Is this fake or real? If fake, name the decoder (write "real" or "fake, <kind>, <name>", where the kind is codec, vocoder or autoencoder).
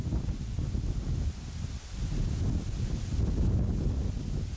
real